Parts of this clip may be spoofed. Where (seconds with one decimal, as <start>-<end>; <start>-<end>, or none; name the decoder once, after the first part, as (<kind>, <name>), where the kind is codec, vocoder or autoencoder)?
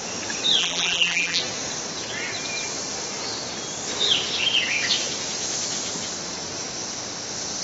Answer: 0.6-1.4 (vocoder, BigVGAN v2)